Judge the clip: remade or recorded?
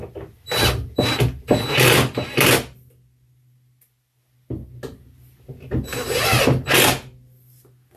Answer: recorded